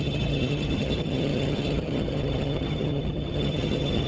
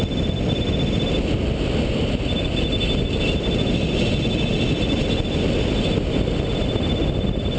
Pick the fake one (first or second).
first